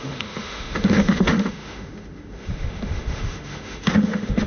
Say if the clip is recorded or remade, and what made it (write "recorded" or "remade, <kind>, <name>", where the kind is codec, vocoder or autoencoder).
remade, autoencoder, DAC-VAE